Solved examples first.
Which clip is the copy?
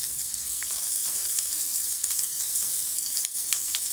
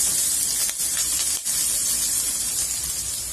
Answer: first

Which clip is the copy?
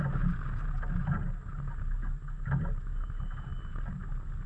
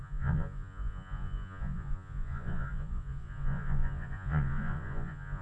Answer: second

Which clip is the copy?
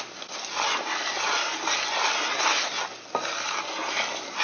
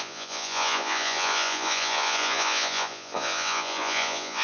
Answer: second